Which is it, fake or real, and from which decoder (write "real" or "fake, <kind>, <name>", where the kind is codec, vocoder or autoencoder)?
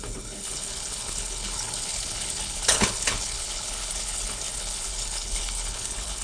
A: fake, codec, HILCodec